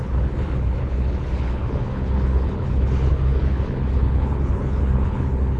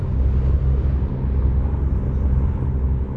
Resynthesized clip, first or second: first